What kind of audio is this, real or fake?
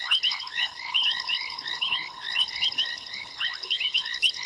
fake